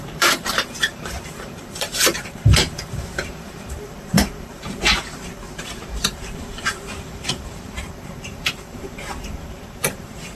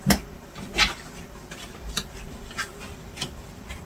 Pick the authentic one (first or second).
second